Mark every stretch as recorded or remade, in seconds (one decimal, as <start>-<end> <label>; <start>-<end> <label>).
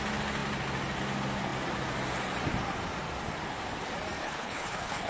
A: 0.0-4.2 recorded; 4.2-5.1 remade